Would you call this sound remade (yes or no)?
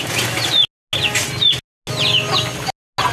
no